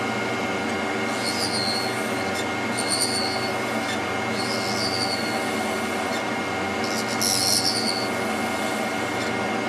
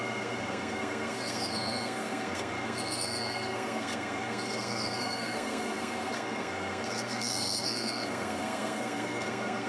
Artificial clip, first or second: second